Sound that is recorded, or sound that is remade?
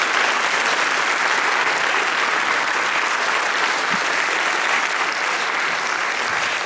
recorded